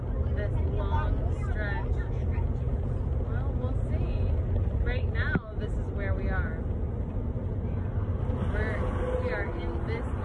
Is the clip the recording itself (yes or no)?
yes